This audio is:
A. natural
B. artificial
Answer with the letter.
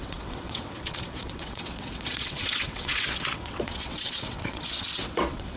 B